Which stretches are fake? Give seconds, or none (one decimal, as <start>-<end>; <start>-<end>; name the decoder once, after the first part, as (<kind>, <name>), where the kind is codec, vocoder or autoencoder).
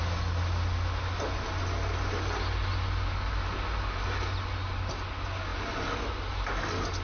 none